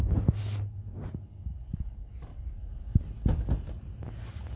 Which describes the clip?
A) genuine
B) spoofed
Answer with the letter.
A